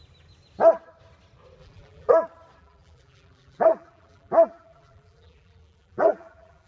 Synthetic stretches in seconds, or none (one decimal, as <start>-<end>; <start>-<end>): 1.6-2.1; 2.6-6.7

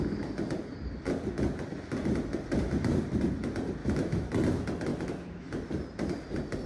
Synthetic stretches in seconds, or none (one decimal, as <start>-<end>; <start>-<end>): 3.8-4.3; 4.9-5.5

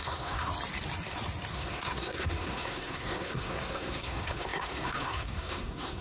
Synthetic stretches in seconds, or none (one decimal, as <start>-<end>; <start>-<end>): 0.0-0.5; 1.5-6.0

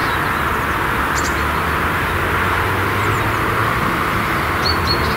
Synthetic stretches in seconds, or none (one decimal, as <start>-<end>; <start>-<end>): 3.1-5.2

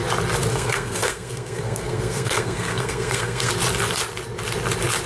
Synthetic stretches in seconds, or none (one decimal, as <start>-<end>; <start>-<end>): 0.5-3.5